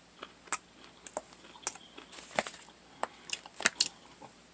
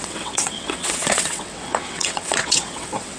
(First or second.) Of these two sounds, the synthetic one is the second